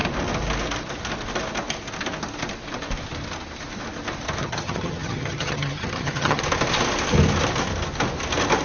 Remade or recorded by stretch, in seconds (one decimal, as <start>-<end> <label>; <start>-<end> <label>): 0.0-4.4 recorded; 4.4-6.4 remade; 6.4-8.6 recorded